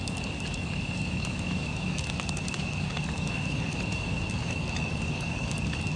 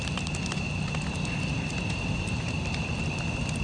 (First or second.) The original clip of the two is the second